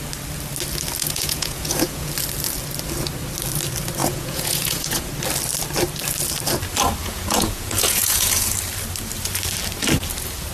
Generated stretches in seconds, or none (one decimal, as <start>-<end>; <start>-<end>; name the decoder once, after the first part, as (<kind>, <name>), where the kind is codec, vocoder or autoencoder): 1.0-2.1 (vocoder, Vocos); 4.0-5.1; 7.0-8.5